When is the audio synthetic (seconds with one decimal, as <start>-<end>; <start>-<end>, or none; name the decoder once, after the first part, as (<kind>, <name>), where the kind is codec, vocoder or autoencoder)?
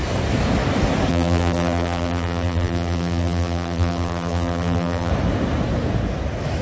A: 1.1-5.1 (vocoder, BigVGAN v2)